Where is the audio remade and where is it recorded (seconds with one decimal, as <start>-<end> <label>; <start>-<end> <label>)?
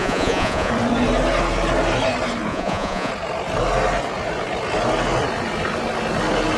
0.0-0.7 remade; 0.7-2.5 recorded; 2.5-3.1 remade; 3.1-6.6 recorded